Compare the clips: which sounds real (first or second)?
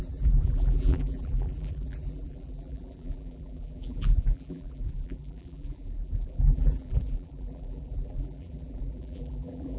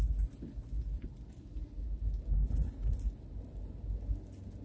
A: second